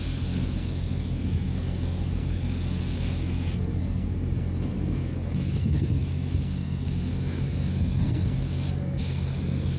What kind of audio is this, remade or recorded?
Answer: remade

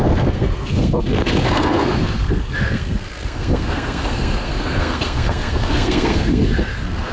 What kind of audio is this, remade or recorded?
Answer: remade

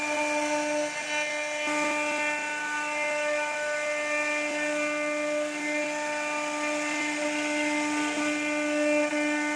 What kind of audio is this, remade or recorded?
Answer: recorded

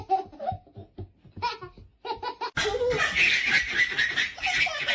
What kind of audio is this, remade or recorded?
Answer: recorded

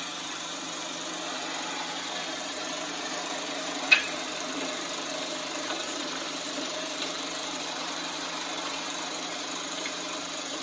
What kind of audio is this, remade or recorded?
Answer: remade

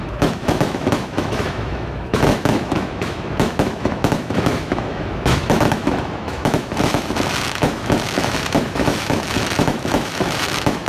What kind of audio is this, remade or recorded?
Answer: remade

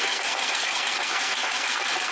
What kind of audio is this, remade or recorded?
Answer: remade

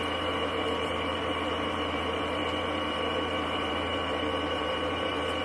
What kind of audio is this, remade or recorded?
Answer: remade